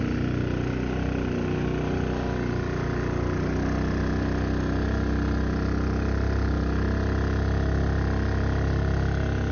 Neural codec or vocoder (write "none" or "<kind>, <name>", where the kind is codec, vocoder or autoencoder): none